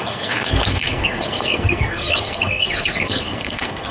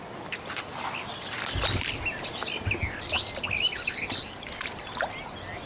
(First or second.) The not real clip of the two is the first